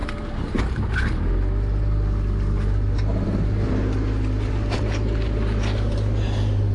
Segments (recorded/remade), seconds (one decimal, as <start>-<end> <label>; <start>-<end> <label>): 0.0-6.7 recorded

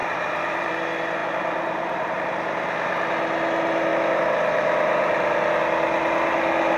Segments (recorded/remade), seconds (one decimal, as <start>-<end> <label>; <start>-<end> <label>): 0.0-0.7 remade; 0.7-1.2 recorded; 1.2-2.3 remade; 2.3-3.9 recorded; 3.9-5.5 remade; 5.5-6.8 recorded